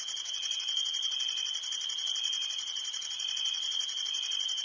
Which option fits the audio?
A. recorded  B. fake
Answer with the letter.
A